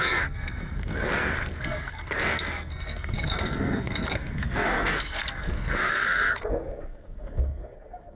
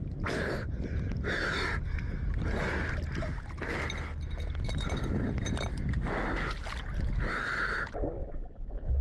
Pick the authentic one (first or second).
second